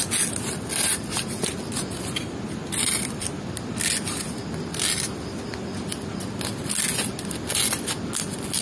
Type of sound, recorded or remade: recorded